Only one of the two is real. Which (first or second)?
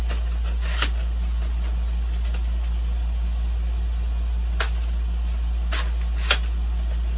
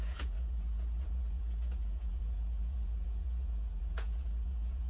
first